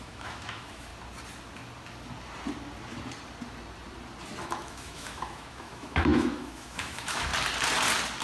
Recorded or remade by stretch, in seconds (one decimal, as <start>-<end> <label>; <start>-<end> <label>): 0.0-0.9 remade; 0.9-4.4 recorded; 4.4-7.3 remade; 7.3-8.2 recorded